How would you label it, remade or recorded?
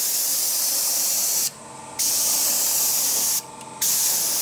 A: recorded